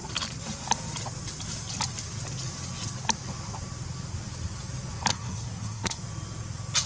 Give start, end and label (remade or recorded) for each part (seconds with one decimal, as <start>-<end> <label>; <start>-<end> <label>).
0.0-5.1 recorded; 5.1-6.0 remade; 6.0-6.9 recorded